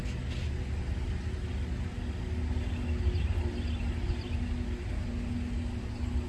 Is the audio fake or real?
real